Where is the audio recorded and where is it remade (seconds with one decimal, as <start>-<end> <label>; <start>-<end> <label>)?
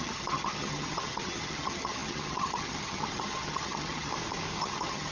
0.0-4.1 remade; 4.1-4.6 recorded; 4.6-5.1 remade